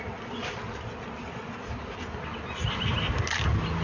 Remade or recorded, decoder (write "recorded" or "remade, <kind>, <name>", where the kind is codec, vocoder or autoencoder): recorded